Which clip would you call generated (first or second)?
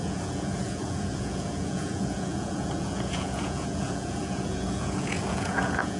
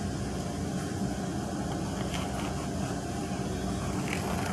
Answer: first